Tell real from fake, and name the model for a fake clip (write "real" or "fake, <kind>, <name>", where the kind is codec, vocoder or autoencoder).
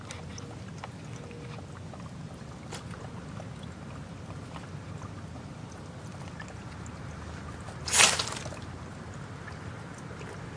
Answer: real